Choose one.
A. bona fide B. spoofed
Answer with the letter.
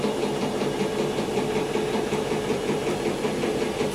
B